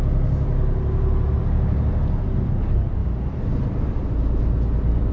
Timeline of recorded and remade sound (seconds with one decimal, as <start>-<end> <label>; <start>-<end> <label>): 0.0-3.0 recorded; 3.0-5.1 remade